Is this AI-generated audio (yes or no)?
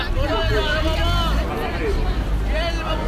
no